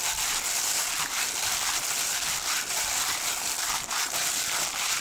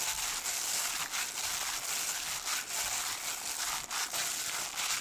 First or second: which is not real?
first